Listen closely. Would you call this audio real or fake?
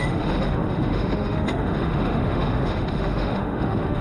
fake